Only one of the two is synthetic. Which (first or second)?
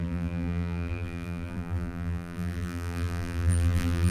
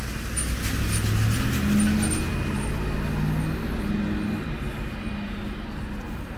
first